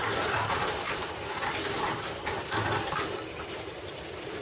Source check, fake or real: fake